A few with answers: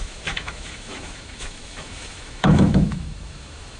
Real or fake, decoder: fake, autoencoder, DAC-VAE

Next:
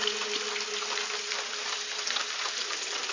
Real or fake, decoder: real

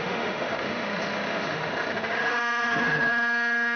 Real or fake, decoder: fake, autoencoder, DAC-VAE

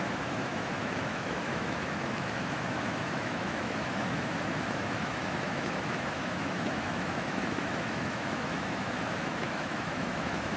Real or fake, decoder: fake, autoencoder, DAC-VAE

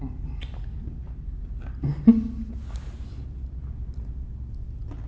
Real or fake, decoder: real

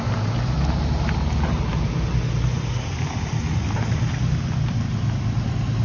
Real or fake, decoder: real